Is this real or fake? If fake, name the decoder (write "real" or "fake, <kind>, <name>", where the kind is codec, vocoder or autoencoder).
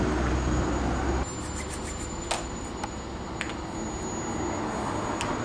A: real